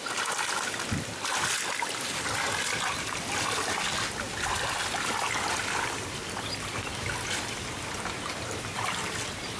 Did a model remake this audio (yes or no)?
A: no